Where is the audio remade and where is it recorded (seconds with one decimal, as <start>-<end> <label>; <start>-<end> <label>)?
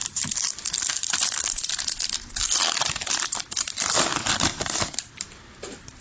0.0-6.0 recorded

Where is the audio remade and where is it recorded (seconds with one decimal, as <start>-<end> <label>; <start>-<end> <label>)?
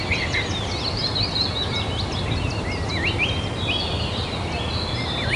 0.0-5.4 recorded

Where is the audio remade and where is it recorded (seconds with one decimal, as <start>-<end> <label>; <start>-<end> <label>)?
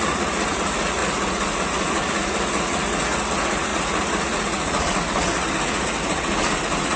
0.0-7.0 remade